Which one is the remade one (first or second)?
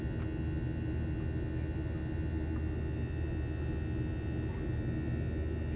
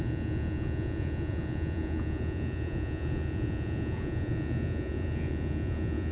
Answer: second